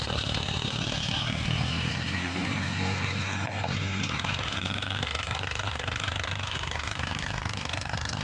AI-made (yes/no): yes